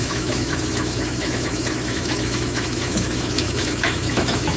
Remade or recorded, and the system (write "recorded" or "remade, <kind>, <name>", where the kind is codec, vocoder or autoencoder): remade, autoencoder, DAC-VAE